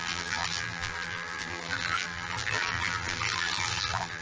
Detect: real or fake fake